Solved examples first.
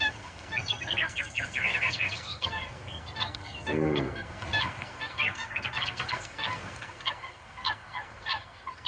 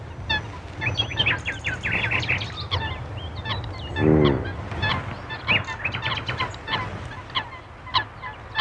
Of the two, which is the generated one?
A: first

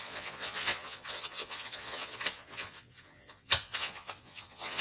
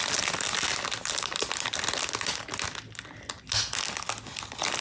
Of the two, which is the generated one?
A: first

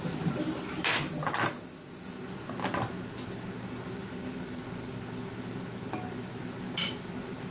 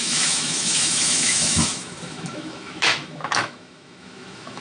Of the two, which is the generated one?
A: second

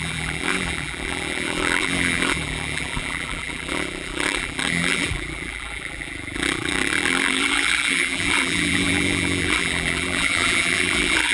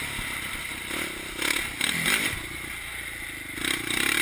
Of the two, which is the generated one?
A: first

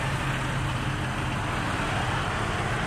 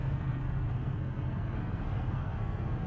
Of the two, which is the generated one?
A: second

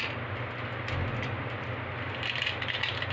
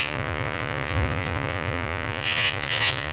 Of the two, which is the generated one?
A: second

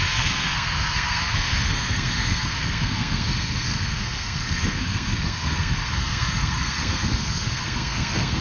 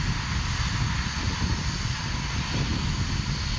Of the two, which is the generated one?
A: first